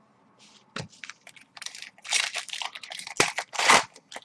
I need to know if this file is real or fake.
fake